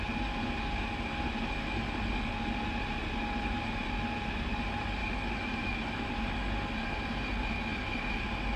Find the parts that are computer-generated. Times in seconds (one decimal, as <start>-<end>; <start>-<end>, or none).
5.0-6.1